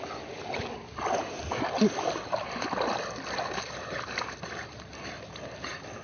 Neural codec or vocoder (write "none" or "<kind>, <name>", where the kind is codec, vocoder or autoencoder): none